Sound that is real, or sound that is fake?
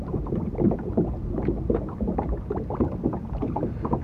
fake